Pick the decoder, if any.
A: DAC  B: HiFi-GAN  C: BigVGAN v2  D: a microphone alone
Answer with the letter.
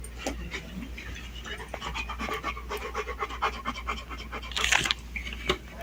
D